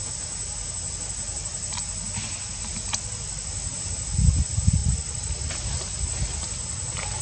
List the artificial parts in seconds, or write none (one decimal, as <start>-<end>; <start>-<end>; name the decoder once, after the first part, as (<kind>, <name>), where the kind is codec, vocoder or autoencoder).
none